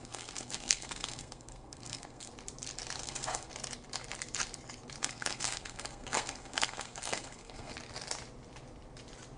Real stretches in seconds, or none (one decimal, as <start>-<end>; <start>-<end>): 2.3-3.0; 3.5-5.0; 7.7-9.4